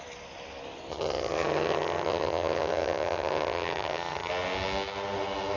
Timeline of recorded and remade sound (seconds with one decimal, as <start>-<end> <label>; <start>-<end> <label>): 0.0-0.9 recorded; 0.9-4.3 remade; 4.3-5.6 recorded